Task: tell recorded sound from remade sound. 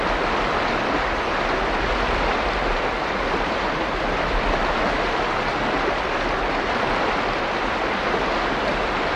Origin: recorded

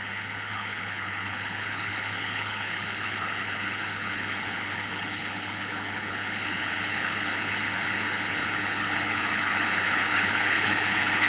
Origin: remade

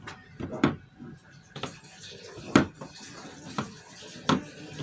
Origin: recorded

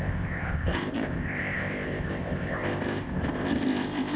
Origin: remade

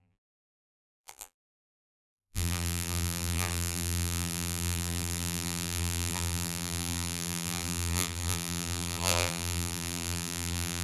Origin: remade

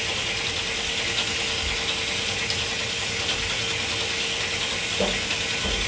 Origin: recorded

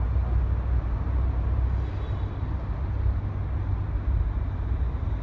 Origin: recorded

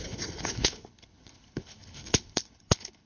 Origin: remade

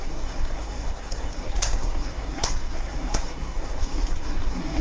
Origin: remade